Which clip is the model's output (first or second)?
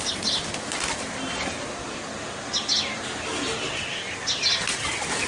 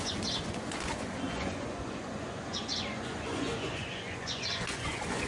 second